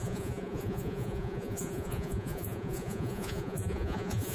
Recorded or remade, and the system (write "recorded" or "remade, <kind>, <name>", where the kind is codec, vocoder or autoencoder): remade, vocoder, Vocos